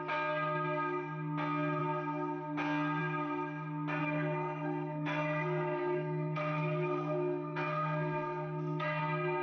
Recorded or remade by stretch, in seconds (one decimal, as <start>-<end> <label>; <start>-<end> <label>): 0.0-4.0 recorded; 4.0-9.0 remade; 9.0-9.4 recorded